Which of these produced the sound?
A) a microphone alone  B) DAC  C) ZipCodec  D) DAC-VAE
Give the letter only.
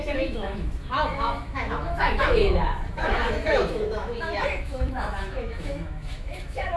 D